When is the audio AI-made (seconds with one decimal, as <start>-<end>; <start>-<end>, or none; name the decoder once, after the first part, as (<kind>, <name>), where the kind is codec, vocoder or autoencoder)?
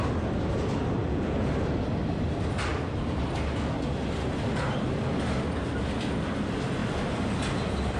1.0-1.5 (vocoder, Vocos)